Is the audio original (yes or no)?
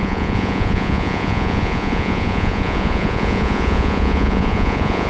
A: no